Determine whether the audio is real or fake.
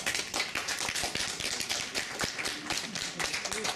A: real